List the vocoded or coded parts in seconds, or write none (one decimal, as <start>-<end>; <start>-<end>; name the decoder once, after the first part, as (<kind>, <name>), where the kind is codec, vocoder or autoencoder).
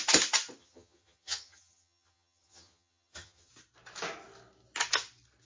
0.6-3.5 (vocoder, HiFi-GAN)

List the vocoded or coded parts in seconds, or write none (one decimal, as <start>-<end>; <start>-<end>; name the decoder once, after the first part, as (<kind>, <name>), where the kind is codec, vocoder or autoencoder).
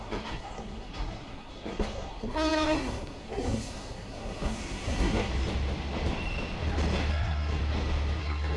0.0-5.3 (codec, SNAC); 7.1-7.6; 8.2-8.6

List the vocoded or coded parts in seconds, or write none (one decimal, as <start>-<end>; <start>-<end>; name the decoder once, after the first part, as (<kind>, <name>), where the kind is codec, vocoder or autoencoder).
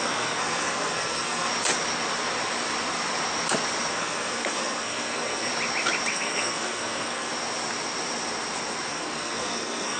0.0-1.5 (codec, SNAC); 3.9-5.5; 6.1-7.3; 8.9-10.0